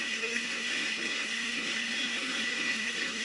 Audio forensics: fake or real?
fake